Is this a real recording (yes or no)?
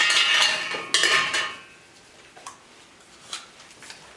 yes